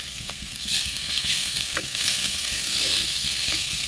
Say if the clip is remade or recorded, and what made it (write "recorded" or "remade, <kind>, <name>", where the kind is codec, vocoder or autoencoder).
remade, codec, SNAC